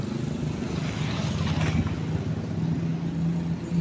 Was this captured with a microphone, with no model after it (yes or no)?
yes